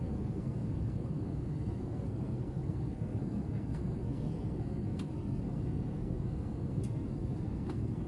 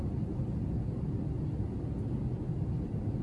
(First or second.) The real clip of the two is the second